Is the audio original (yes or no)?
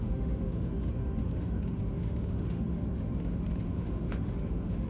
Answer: no